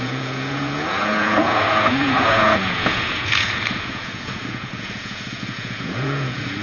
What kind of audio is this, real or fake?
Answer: fake